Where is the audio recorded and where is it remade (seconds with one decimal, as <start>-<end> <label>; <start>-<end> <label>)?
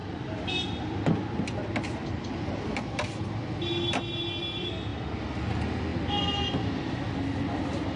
0.0-8.0 recorded